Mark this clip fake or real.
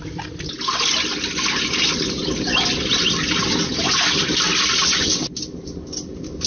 real